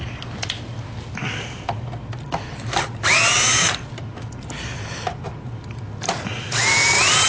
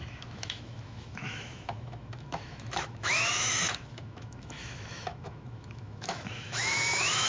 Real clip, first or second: first